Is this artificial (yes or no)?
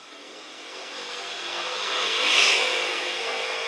yes